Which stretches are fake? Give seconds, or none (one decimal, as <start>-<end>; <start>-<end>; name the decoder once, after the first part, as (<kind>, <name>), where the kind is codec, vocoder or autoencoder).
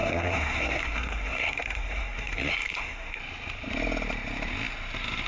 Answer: 0.0-3.2 (codec, SNAC)